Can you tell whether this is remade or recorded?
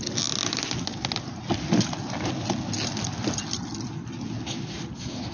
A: recorded